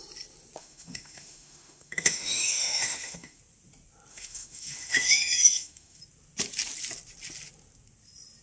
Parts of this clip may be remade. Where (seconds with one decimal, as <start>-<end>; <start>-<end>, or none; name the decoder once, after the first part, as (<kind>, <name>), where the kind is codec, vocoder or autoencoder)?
0.6-3.4 (autoencoder, DAC-VAE); 4.1-6.0